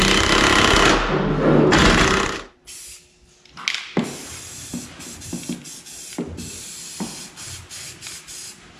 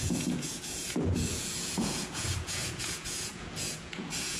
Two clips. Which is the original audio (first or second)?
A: first